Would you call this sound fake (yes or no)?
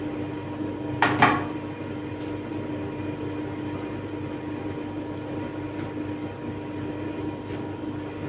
no